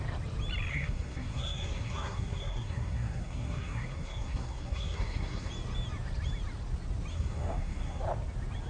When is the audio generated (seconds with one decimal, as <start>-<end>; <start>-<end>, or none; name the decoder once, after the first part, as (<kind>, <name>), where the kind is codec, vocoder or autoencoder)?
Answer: 0.7-5.5 (codec, SNAC); 7.1-8.0